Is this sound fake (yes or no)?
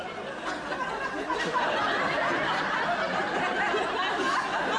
no